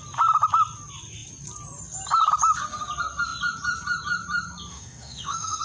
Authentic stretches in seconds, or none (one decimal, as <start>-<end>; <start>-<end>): 0.0-4.7